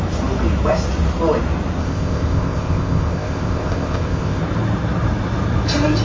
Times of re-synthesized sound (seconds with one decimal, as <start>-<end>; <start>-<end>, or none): 1.8-4.4